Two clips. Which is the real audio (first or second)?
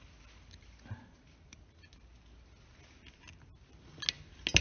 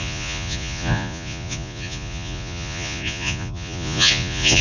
first